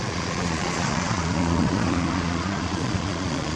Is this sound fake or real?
fake